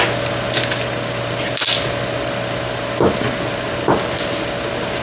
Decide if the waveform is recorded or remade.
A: recorded